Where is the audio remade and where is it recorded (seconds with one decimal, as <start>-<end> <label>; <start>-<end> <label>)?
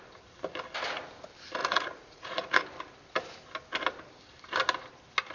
0.0-1.6 recorded; 1.6-2.6 remade; 2.6-5.3 recorded